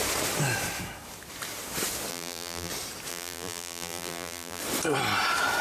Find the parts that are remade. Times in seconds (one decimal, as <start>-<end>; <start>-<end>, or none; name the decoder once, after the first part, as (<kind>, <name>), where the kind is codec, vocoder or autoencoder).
2.1-2.7 (vocoder, BigVGAN v2); 3.1-4.6